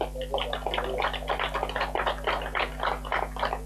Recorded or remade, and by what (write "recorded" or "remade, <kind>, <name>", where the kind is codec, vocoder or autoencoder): recorded